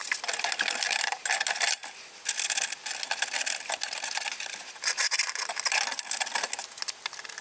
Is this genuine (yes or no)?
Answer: yes